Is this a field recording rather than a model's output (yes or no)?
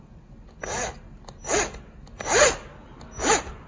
yes